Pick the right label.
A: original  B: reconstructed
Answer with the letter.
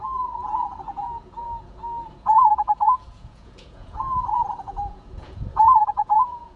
B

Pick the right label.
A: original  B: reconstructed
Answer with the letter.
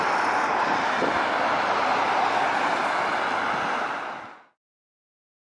A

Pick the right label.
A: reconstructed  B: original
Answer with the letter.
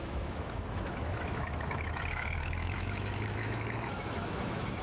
A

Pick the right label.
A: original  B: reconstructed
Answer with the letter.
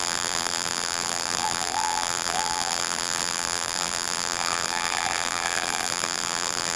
B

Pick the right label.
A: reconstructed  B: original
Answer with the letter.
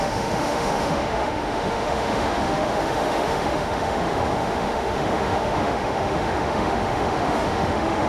A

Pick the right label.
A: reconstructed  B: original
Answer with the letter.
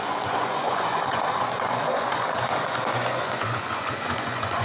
A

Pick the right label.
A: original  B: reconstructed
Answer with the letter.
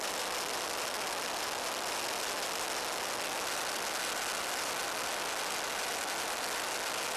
A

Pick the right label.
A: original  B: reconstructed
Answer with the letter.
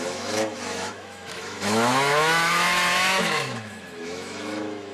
B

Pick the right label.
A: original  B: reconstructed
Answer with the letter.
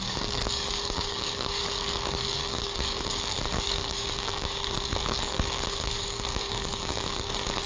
B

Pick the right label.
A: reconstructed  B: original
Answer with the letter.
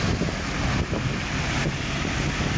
B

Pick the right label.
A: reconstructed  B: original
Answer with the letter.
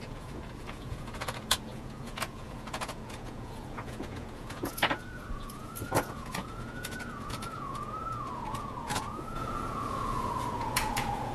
A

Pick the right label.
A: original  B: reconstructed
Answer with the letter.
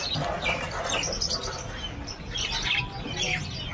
A